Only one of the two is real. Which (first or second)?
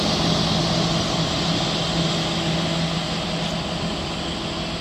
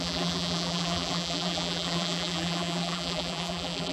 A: first